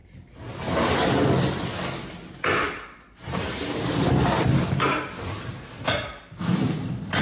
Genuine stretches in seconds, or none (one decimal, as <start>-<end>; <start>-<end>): 0.0-7.2